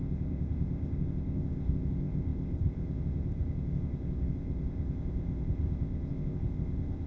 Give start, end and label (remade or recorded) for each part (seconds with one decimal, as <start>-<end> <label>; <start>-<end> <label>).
0.0-7.1 remade